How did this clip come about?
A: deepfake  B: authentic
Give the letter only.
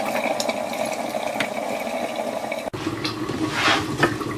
B